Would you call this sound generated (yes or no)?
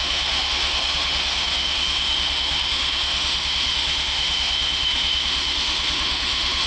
yes